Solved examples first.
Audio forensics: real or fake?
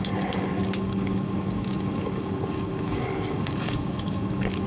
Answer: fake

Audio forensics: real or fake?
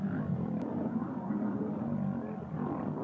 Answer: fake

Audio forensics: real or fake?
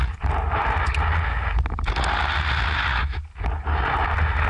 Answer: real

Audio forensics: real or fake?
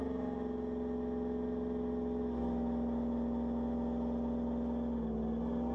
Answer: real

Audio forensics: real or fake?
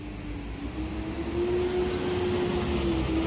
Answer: real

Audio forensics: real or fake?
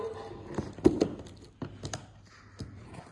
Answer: real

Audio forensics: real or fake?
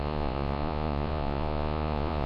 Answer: fake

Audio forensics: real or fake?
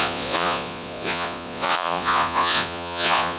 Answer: fake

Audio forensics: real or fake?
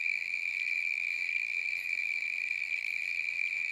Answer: fake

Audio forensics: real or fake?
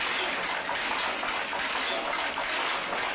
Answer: real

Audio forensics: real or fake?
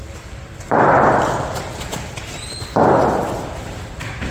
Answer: real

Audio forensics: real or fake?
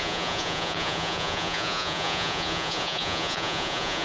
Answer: fake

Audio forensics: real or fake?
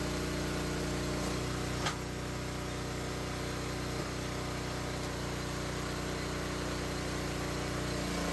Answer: real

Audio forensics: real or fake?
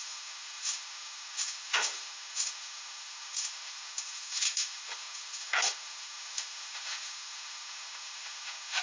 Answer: fake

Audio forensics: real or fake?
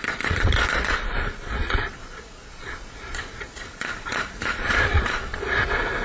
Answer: fake